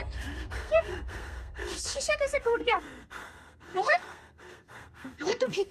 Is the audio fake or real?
fake